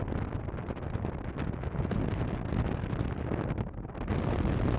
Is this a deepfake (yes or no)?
no